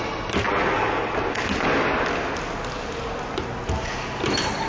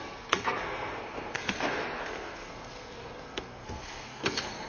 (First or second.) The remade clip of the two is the second